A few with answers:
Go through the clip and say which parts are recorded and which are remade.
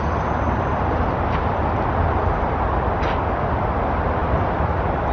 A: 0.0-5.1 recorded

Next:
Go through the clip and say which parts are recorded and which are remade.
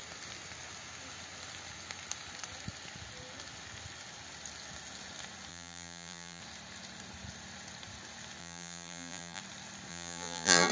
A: 0.0-5.5 recorded; 5.5-6.4 remade; 6.4-8.4 recorded; 8.4-9.4 remade; 9.4-9.9 recorded; 9.9-10.7 remade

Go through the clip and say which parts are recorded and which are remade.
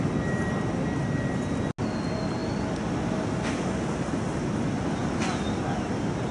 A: 0.0-6.3 recorded